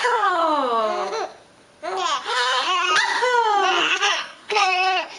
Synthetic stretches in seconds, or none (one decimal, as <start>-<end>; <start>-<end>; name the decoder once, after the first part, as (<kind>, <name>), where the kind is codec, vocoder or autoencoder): 0.0-0.4 (codec, SNAC); 2.3-2.9; 3.8-5.2